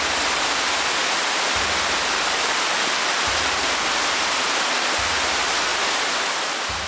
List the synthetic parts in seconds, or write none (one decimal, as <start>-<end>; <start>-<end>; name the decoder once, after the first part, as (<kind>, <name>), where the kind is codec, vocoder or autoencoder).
none